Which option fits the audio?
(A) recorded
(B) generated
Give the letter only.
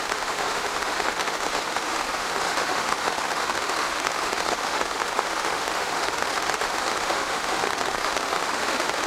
B